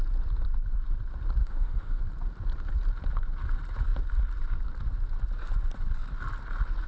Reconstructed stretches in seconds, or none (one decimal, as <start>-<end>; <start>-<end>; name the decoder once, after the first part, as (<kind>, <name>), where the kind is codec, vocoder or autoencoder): 1.4-2.0 (autoencoder, DAC-VAE)